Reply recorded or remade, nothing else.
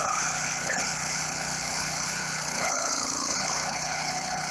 remade